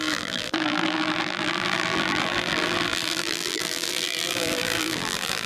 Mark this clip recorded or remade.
remade